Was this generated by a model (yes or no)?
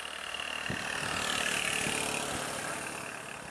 no